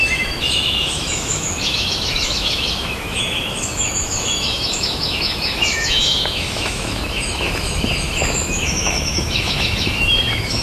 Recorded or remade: remade